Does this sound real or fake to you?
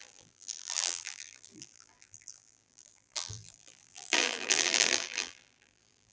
fake